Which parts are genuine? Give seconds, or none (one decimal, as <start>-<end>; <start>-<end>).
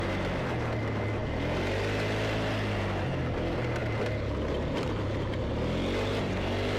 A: 0.0-6.8